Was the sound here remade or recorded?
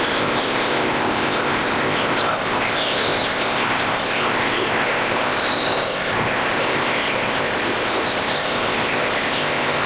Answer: remade